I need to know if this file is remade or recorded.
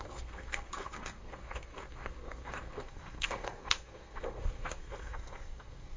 remade